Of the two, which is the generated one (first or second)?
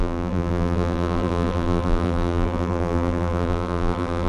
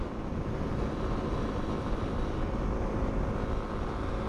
first